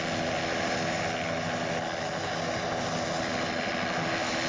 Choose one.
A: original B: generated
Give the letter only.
A